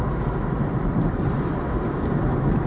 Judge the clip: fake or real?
real